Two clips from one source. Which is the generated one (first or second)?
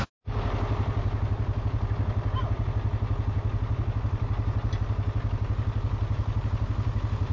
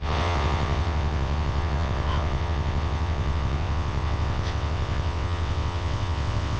second